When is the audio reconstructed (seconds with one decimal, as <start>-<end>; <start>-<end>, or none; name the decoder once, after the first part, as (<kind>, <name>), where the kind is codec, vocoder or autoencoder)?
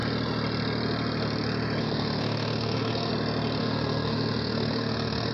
1.8-3.1 (codec, SNAC); 3.6-5.3